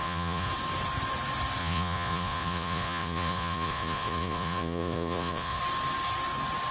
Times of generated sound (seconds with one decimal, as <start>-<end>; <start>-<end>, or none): 0.0-0.5; 1.6-5.6